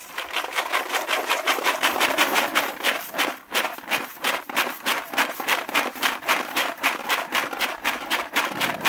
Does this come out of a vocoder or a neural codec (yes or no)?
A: yes